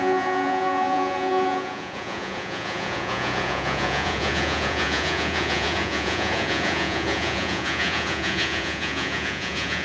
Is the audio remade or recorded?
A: remade